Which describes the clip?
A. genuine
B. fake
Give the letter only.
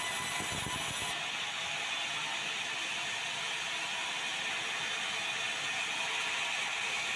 A